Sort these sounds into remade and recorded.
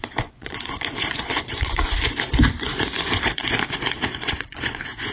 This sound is remade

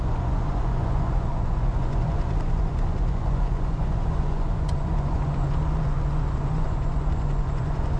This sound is remade